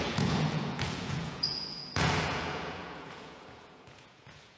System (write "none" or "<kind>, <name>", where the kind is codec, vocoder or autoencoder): vocoder, Vocos